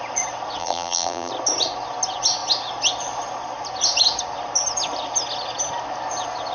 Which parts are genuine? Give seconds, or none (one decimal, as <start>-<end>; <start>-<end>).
0.0-0.6; 1.3-6.5

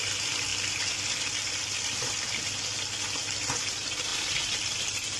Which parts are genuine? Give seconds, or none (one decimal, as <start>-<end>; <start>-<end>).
0.0-0.5; 2.3-4.1; 4.8-5.2

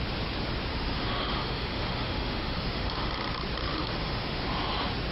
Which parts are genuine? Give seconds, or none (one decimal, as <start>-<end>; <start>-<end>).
0.0-0.7; 3.1-3.6; 4.4-5.1